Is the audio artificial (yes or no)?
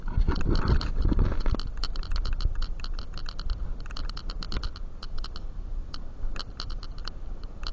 no